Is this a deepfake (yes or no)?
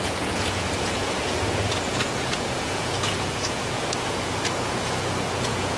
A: yes